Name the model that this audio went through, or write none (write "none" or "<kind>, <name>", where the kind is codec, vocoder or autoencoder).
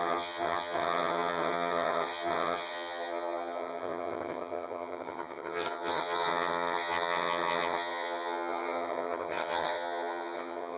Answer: vocoder, HiFi-GAN